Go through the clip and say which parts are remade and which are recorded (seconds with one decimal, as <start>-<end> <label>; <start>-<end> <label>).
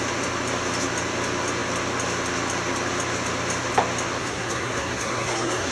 0.0-4.2 recorded; 4.2-5.7 remade